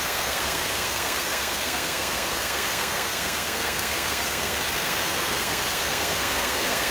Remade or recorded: remade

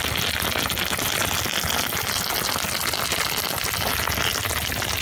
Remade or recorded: recorded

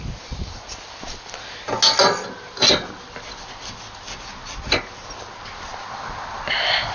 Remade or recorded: recorded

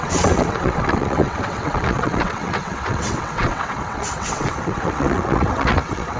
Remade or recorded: remade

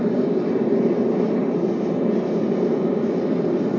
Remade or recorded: recorded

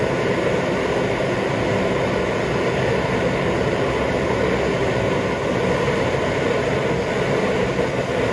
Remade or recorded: recorded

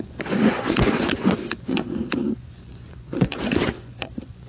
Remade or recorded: remade